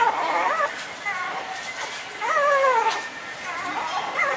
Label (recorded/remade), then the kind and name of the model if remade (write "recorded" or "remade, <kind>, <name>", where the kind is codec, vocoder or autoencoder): recorded